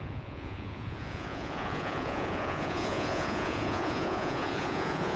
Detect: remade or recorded remade